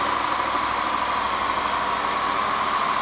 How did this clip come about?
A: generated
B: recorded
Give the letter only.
B